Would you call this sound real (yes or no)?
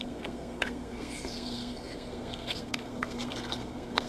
no